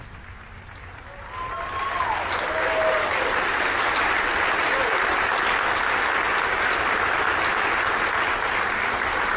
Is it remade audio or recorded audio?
recorded